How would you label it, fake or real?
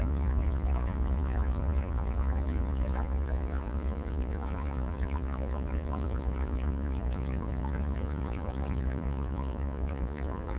fake